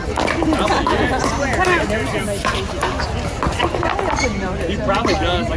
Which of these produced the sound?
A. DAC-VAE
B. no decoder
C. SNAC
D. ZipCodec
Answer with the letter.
B